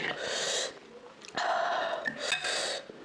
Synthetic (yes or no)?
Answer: no